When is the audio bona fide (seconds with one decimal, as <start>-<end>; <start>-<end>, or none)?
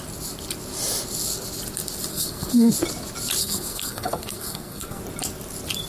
0.0-2.1; 2.7-3.4; 5.0-5.9